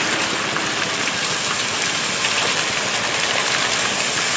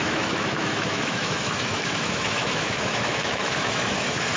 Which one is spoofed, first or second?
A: second